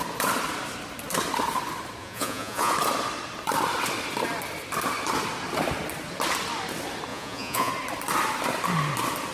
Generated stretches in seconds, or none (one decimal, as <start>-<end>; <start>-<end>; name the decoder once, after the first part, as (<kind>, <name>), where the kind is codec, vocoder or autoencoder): 2.0-2.7 (vocoder, Vocos); 7.1-7.7